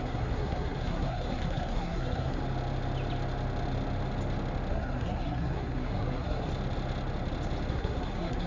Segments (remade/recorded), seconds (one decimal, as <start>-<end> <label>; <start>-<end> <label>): 0.0-2.4 remade; 2.4-4.7 recorded; 4.7-6.5 remade; 6.5-7.7 recorded; 7.7-8.5 remade